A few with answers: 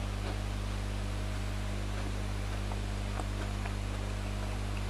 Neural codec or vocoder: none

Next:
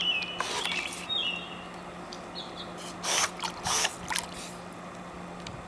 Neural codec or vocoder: none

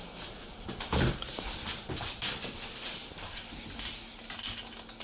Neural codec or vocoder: none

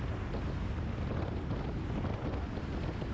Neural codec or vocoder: none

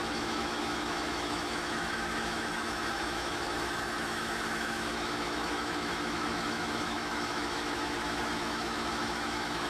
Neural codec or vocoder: autoencoder, DAC-VAE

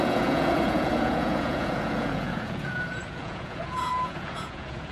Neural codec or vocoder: vocoder, Vocos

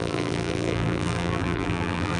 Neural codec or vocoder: vocoder, BigVGAN v2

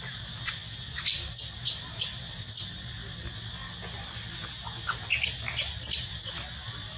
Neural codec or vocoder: none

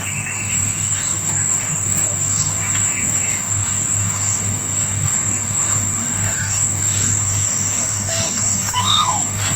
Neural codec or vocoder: codec, DAC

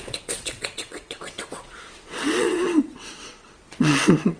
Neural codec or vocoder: vocoder, WaveNeXt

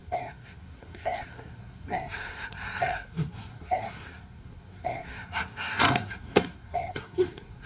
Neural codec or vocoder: codec, SNAC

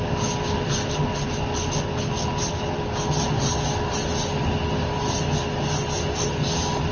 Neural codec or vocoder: none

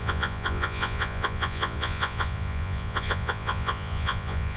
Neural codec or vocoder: vocoder, Vocos